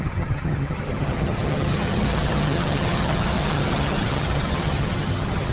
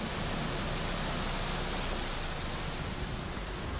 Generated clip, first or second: first